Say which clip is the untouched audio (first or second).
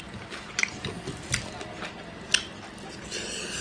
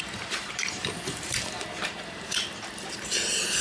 first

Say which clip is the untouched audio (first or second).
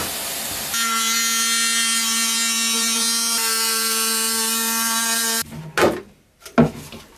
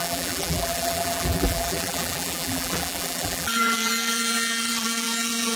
first